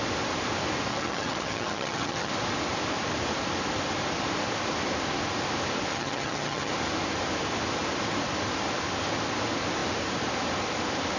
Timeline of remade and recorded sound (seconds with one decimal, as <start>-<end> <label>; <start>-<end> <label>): 0.0-0.9 recorded; 0.9-2.3 remade; 2.3-5.9 recorded; 5.9-6.7 remade; 6.7-11.2 recorded